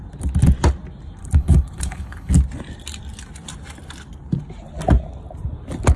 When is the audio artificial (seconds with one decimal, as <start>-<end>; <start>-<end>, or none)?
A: 1.2-2.3